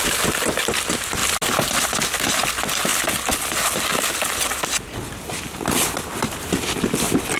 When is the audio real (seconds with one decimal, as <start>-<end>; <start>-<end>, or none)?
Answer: 0.0-7.4

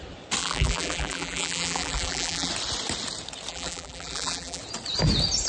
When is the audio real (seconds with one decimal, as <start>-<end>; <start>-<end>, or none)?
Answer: 0.0-0.4; 2.5-3.5; 4.6-5.5

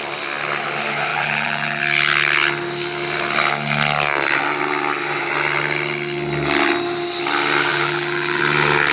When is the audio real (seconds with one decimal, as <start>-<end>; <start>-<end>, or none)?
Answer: 0.0-1.1; 1.8-7.7; 8.4-8.9

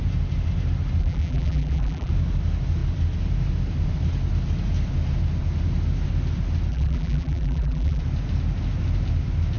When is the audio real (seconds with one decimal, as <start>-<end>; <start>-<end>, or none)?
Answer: 0.0-1.0; 2.1-6.7; 8.0-9.6